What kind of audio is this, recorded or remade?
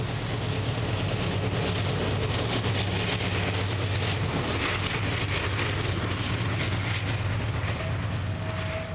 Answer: recorded